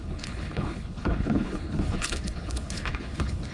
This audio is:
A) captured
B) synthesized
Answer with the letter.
B